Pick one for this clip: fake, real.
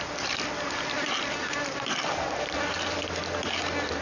real